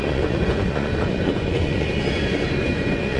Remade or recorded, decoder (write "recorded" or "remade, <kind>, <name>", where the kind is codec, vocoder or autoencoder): remade, vocoder, Vocos